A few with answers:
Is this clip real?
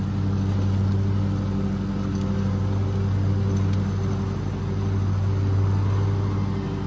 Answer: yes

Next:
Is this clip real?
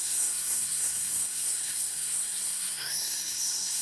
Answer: no